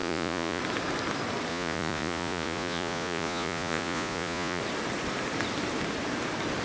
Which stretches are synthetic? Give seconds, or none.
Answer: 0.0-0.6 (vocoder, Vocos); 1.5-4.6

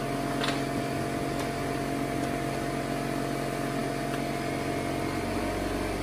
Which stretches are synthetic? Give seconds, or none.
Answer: none

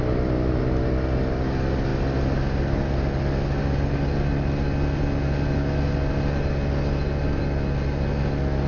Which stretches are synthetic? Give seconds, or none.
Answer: none